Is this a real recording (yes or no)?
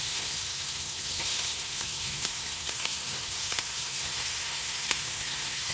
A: no